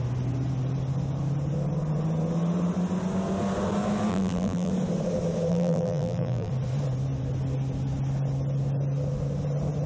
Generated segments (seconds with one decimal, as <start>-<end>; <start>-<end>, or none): 4.1-4.7; 5.5-6.5